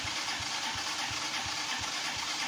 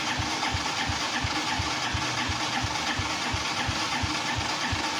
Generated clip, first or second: first